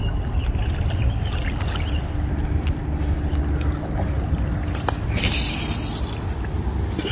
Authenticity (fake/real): real